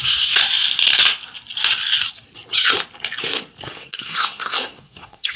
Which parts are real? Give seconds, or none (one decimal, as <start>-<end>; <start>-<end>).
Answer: 0.4-3.6